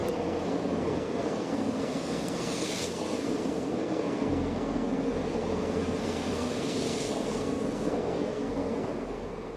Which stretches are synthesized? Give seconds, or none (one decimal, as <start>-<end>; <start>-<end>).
0.0-9.6

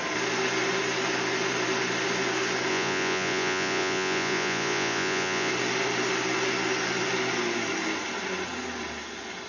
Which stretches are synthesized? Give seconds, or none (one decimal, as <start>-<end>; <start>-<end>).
2.7-5.5